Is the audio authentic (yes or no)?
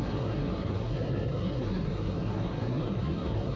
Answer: no